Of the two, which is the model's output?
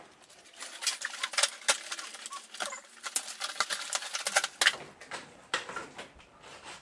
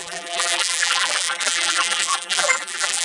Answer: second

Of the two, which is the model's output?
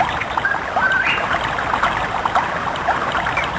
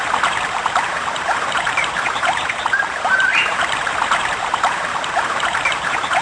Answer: second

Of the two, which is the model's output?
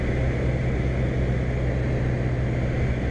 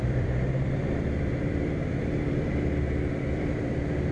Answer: second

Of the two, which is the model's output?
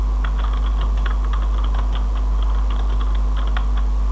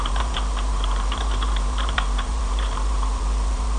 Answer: second